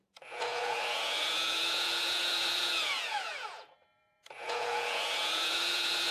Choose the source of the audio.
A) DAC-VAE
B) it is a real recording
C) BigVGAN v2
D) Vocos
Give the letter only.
D